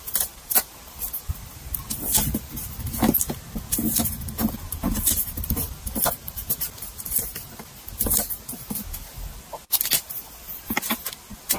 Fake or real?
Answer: real